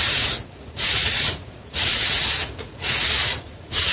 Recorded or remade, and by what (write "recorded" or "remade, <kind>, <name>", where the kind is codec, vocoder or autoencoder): remade, vocoder, Vocos